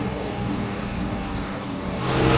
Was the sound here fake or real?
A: fake